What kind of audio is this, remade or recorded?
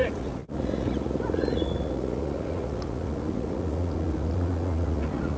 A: remade